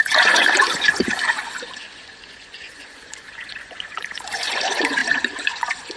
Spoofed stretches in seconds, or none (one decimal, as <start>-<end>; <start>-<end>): 0.0-6.0